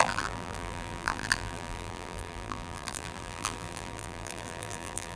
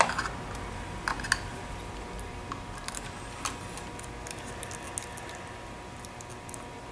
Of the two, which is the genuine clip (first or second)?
second